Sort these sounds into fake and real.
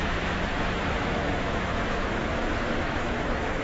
fake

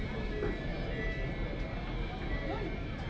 real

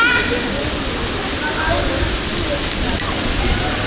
real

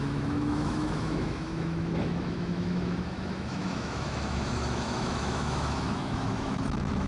fake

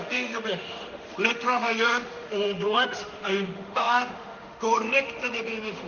fake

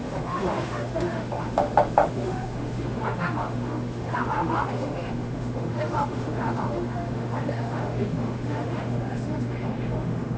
fake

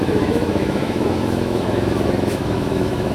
fake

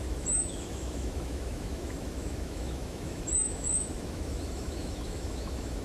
fake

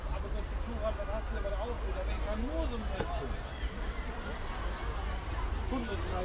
real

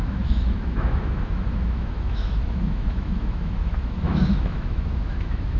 fake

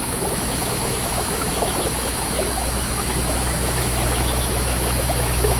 fake